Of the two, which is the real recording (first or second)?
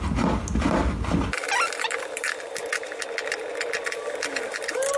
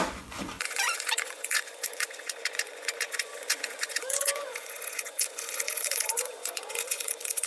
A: first